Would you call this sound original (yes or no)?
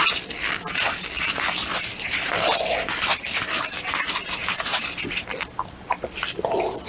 yes